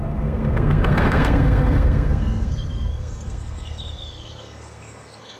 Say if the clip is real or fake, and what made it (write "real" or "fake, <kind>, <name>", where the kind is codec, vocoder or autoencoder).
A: fake, codec, SNAC